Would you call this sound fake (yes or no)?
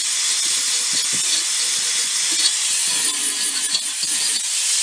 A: no